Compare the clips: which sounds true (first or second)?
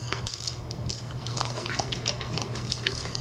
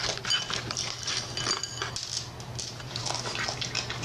second